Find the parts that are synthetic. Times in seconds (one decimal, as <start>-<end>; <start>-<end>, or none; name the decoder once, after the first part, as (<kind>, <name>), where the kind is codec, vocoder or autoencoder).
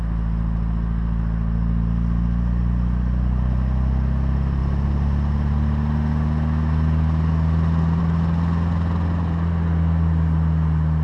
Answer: none